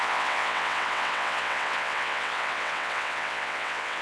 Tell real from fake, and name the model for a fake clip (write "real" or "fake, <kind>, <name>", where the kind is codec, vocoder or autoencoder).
fake, vocoder, WaveNeXt